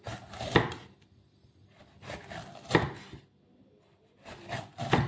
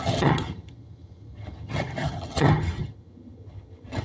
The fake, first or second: second